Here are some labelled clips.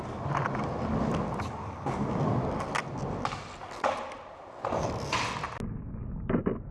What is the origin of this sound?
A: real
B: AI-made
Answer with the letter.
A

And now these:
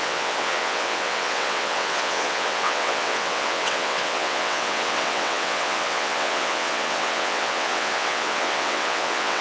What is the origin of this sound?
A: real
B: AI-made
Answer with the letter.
B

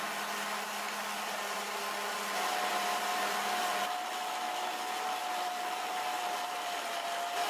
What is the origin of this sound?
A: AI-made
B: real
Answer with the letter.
B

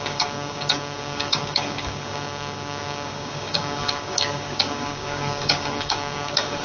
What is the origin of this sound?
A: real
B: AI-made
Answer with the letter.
B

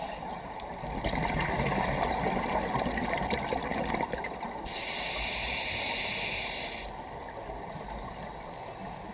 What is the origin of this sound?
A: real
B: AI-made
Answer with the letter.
A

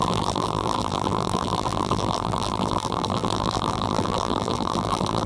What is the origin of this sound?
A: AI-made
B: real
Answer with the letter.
A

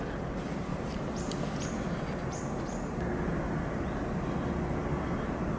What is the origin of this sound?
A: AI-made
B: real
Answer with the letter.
B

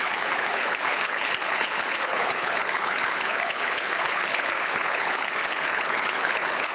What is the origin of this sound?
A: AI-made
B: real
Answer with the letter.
A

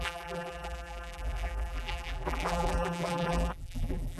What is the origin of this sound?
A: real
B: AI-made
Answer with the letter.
B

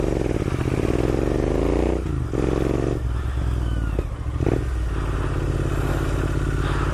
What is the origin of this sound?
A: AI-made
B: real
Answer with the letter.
B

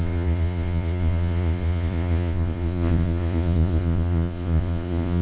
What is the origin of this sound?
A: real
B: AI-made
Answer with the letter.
B